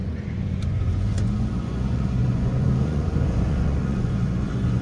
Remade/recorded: remade